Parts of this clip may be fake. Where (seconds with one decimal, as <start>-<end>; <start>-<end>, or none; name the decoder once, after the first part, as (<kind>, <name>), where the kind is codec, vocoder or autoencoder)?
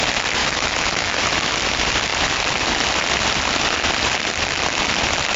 0.4-1.2 (autoencoder, DAC-VAE)